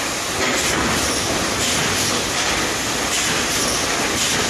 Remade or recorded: recorded